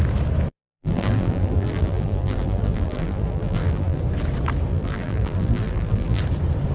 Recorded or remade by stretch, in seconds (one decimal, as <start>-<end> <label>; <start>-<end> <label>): 0.0-0.5 recorded; 0.5-4.0 remade; 4.0-4.7 recorded; 4.7-6.2 remade; 6.2-6.7 recorded